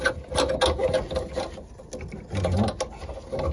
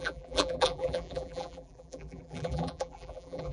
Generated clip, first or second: second